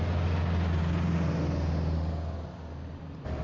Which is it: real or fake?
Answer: real